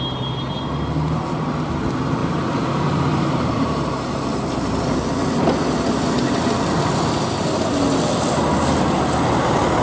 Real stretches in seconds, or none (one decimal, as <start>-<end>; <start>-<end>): 0.0-2.2; 4.2-9.8